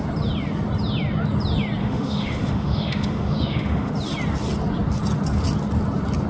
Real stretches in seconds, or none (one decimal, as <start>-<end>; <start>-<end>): 0.0-1.8; 3.9-6.3